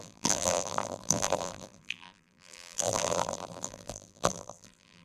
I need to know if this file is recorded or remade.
remade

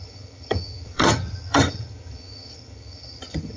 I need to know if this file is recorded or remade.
remade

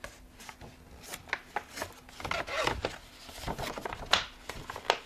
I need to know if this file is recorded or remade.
recorded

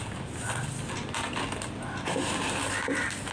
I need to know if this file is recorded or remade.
recorded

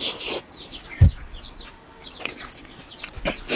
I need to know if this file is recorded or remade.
recorded